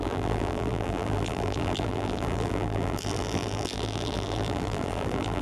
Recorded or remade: remade